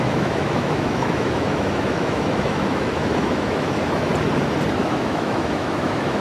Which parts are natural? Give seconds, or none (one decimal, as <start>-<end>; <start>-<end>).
4.1-4.8